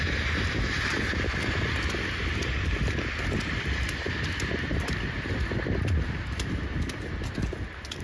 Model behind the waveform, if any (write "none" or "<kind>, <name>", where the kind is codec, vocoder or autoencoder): none